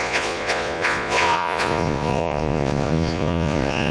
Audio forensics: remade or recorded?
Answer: remade